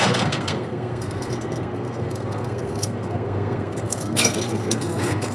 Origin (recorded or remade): remade